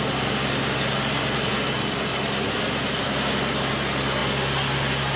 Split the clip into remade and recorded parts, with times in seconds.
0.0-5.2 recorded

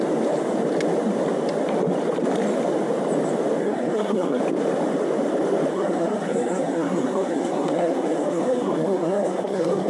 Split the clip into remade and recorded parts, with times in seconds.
0.0-3.6 recorded; 3.6-4.4 remade; 4.4-5.7 recorded; 5.7-9.9 remade

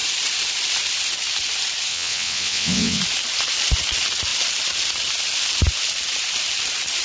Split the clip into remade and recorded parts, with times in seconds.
0.0-1.9 recorded; 1.9-3.0 remade; 3.0-7.0 recorded

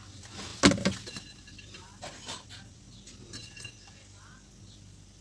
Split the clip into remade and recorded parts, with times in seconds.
0.0-5.2 recorded